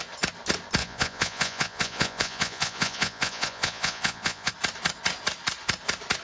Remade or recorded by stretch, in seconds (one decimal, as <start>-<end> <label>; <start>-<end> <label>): 0.0-0.8 recorded; 0.8-4.5 remade; 4.5-6.2 recorded